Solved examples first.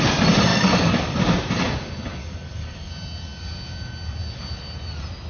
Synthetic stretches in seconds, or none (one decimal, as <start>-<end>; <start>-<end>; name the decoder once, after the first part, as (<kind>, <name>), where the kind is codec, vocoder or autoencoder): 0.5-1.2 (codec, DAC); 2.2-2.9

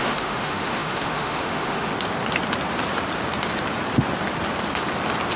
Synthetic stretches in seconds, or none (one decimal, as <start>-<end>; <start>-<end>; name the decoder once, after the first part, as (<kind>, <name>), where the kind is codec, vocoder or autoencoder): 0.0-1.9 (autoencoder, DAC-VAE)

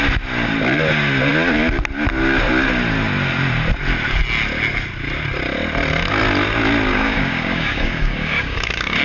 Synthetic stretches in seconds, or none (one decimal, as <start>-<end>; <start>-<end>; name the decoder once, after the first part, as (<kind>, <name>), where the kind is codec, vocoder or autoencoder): 6.9-9.0 (codec, DAC)

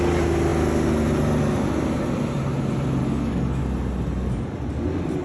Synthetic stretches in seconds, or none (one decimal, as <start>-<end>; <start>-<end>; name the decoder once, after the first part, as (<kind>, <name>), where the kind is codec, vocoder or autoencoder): 3.0-3.6 (codec, DAC)

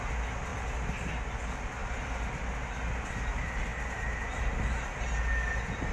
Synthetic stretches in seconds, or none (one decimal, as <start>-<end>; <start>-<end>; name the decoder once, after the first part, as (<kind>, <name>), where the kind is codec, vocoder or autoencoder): none